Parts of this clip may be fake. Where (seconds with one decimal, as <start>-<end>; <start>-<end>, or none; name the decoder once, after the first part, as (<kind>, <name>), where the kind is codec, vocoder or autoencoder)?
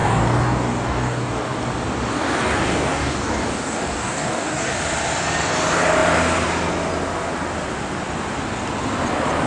0.0-1.6 (codec, DAC); 2.1-4.8